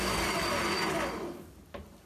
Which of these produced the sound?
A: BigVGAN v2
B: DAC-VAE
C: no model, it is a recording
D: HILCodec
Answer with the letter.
C